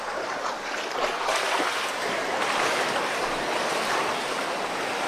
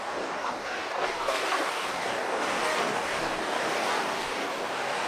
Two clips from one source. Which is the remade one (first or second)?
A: second